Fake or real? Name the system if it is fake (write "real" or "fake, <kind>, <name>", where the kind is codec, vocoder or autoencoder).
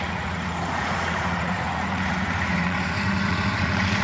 fake, vocoder, Vocos